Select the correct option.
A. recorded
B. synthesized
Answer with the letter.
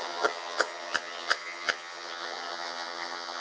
B